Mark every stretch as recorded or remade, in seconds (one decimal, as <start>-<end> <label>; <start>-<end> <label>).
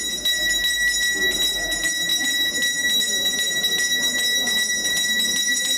0.0-5.8 recorded